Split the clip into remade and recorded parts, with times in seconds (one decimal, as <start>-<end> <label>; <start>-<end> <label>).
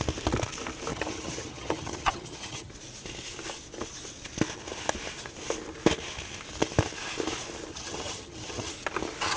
0.0-0.9 recorded; 0.9-2.7 remade; 2.7-7.7 recorded; 7.7-8.7 remade; 8.7-9.4 recorded